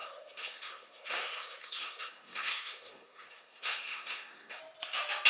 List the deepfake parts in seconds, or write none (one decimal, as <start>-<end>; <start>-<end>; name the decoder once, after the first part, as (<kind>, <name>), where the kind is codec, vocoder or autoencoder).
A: 0.0-4.6 (codec, SNAC)